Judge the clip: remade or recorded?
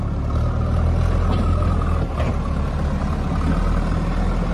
recorded